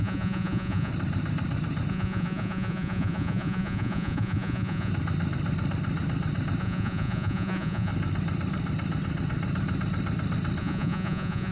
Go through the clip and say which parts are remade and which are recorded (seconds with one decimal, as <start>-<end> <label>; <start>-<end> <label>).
0.0-0.9 remade; 0.9-1.9 recorded; 1.9-4.9 remade; 4.9-6.6 recorded; 6.6-7.9 remade; 7.9-10.6 recorded; 10.6-11.5 remade